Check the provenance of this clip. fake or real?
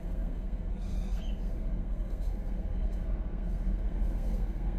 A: fake